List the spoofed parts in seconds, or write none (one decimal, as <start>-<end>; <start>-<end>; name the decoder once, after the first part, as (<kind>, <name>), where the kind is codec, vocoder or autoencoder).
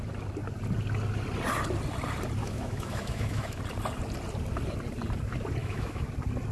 2.4-3.6 (autoencoder, DAC-VAE); 5.6-6.1